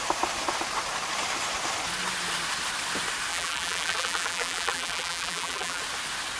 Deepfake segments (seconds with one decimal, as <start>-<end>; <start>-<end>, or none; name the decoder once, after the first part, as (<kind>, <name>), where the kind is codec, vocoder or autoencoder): 3.3-5.8 (vocoder, BigVGAN v2)